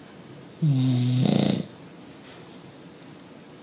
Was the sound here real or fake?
real